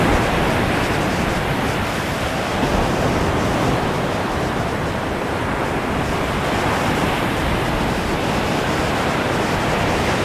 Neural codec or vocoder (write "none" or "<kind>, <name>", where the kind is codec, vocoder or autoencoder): vocoder, BigVGAN v2